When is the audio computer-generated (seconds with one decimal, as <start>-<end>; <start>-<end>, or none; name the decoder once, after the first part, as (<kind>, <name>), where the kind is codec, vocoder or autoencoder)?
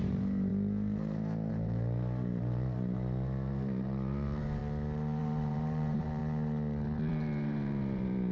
0.0-0.5 (vocoder, BigVGAN v2); 1.5-4.6; 5.2-6.2; 7.1-8.3